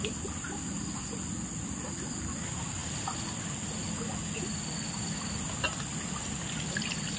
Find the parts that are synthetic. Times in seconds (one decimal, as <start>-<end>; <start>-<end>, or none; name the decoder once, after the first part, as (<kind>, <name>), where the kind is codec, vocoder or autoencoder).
none